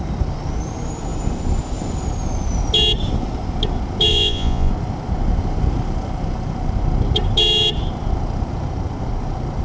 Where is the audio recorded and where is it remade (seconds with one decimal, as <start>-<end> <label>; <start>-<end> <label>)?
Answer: 0.0-4.1 recorded; 4.1-4.7 remade; 4.7-9.6 recorded